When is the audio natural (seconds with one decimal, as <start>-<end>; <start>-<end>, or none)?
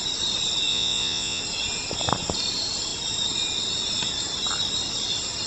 0.0-0.7; 1.4-5.5